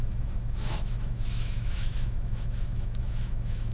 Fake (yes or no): yes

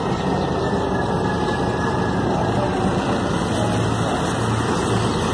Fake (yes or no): no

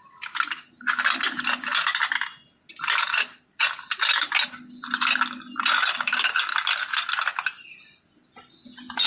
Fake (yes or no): no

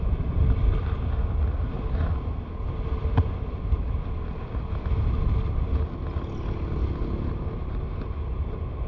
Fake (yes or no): no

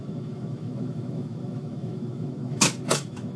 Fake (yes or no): yes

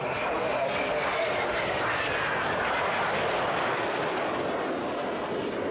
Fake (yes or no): no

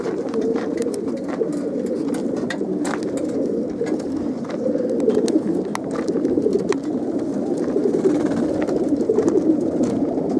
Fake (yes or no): no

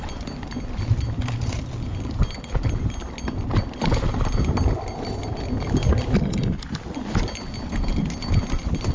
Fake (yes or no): no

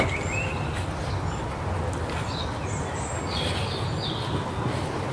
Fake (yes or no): no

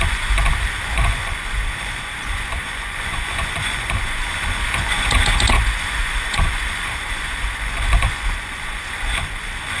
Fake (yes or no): yes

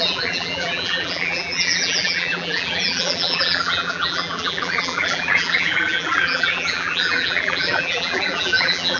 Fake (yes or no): yes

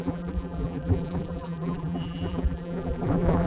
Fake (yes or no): yes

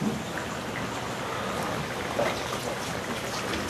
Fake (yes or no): no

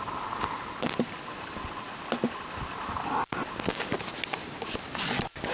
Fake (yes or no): no